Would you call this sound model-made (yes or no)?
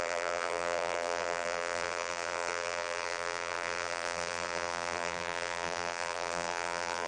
yes